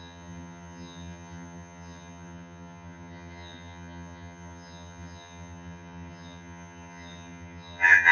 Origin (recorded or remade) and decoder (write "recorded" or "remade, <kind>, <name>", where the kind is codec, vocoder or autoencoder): remade, vocoder, HiFi-GAN